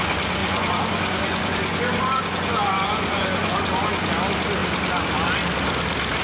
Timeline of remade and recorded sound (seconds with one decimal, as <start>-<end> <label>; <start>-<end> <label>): 0.0-0.4 recorded; 0.4-4.1 remade; 4.1-6.2 recorded